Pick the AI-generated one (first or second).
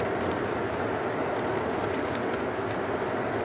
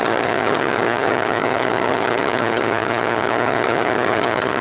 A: second